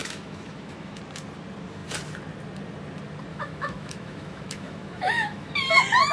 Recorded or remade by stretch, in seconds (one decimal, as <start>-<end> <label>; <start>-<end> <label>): 0.0-1.0 remade; 1.0-3.3 recorded; 3.3-5.5 remade; 5.5-6.1 recorded